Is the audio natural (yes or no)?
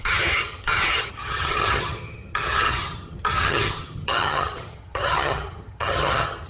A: no